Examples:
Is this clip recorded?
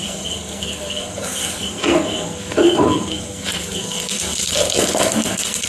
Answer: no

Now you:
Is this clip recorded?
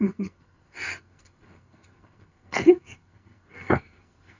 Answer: no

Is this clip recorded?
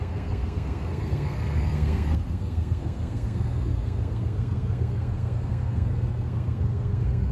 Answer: no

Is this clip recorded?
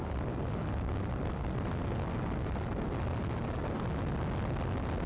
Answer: yes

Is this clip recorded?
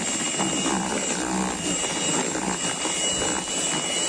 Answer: yes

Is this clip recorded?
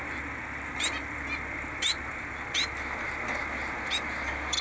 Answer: yes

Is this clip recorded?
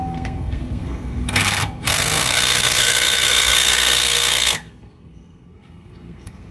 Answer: no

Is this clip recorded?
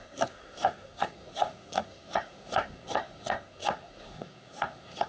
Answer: no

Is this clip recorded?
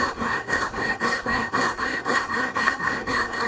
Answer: no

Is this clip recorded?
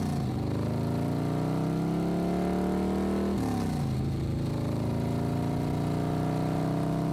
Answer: yes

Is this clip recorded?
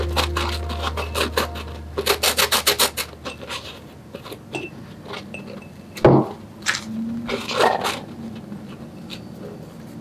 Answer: yes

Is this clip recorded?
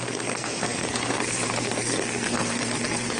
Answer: no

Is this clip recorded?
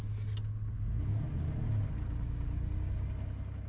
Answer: yes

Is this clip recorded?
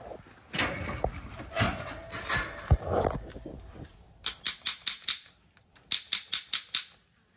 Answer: yes